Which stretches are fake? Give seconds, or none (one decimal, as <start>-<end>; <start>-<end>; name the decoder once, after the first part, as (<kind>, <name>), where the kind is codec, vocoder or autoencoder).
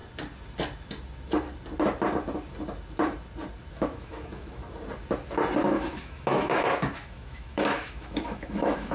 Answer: 3.7-4.6 (autoencoder, DAC-VAE); 5.6-8.9